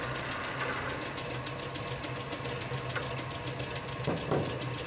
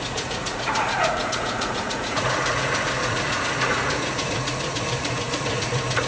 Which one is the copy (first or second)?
second